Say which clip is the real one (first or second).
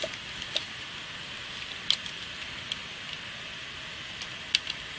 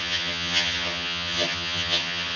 first